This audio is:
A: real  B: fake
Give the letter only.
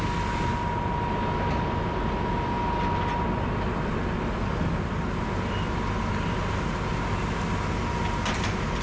A